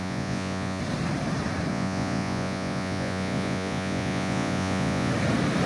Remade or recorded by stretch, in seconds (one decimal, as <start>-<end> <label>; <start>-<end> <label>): 0.0-0.8 remade; 0.8-1.7 recorded; 1.7-5.1 remade; 5.1-5.7 recorded